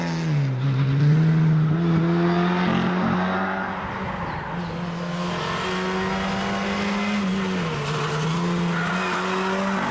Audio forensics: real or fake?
real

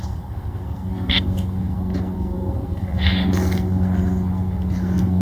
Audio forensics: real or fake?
fake